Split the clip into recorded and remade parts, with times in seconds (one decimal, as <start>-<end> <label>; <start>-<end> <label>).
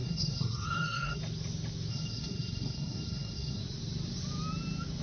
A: 0.0-1.2 remade; 1.2-1.9 recorded; 1.9-3.6 remade; 3.6-5.0 recorded